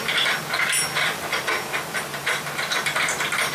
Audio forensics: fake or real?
real